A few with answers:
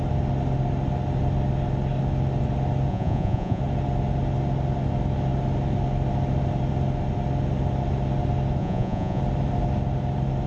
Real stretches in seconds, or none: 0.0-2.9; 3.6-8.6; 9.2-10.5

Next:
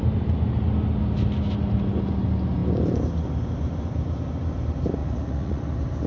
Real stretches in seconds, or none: 0.0-5.0; 5.6-6.1

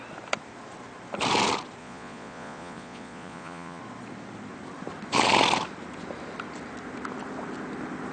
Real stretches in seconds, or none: 0.0-1.8; 3.8-8.1

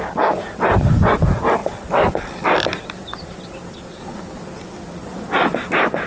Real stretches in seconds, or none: 0.0-6.1

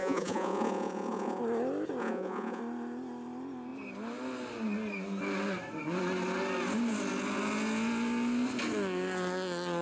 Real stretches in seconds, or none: 1.4-2.0; 2.6-9.8